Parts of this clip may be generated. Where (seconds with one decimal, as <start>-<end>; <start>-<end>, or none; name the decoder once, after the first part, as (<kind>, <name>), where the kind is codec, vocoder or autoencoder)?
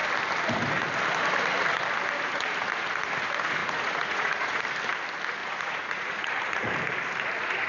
3.6-4.6 (vocoder, Vocos); 5.4-6.3